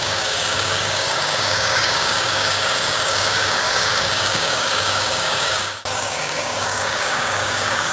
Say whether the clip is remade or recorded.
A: remade